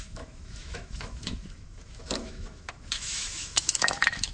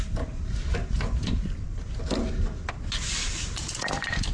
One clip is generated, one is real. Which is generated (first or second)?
first